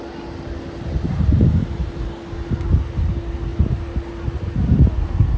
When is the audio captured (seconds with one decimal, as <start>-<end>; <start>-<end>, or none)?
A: 0.0-5.4